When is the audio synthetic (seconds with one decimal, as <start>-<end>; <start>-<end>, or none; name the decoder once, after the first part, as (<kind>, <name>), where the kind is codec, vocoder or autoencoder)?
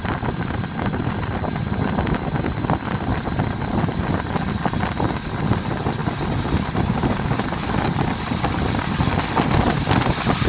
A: none